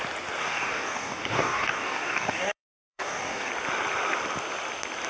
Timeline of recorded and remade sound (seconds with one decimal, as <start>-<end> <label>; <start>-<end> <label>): 0.0-0.4 recorded; 0.4-3.5 remade; 3.5-5.1 recorded